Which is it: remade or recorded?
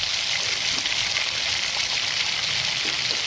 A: recorded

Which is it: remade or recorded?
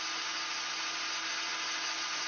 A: recorded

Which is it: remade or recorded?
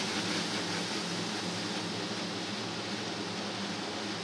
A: recorded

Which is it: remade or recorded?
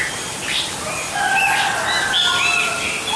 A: recorded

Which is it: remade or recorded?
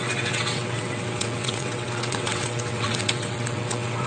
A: remade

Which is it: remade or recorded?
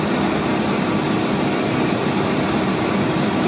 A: recorded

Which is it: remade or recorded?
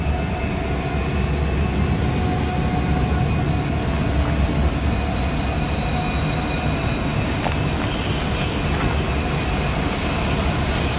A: recorded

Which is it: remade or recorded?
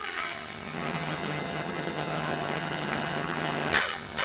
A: remade